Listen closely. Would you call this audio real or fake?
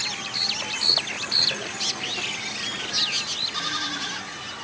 real